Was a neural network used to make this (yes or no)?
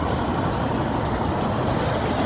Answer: no